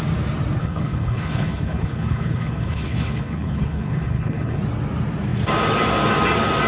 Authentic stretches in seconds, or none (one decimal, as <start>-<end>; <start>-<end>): 0.0-0.6; 4.6-6.7